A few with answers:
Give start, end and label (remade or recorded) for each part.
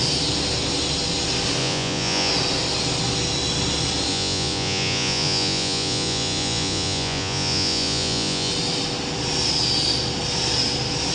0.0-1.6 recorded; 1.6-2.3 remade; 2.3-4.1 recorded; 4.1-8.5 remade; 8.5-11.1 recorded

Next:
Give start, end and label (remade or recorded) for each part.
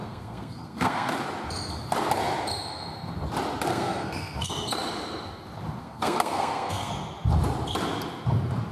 0.0-1.1 remade; 1.1-3.7 recorded; 3.7-4.5 remade; 4.5-5.8 recorded; 5.8-6.9 remade; 6.9-8.7 recorded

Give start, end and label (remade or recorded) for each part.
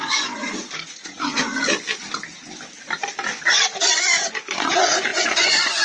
0.0-1.5 remade; 1.5-3.4 recorded; 3.4-5.8 remade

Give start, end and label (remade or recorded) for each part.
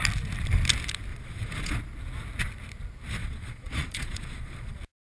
0.0-1.1 recorded; 1.1-1.7 remade; 1.7-3.2 recorded; 3.2-4.8 remade; 4.8-5.2 recorded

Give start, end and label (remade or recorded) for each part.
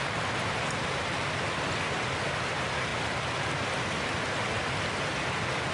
0.0-5.7 recorded